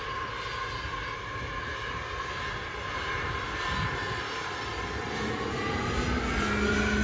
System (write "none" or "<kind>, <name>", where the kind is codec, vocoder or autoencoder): none